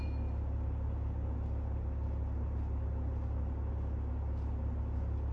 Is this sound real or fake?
real